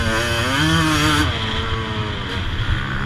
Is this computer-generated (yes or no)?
no